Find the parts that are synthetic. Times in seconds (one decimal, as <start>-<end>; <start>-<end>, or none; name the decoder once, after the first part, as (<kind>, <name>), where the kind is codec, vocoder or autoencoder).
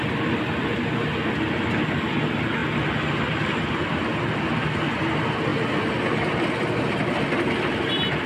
none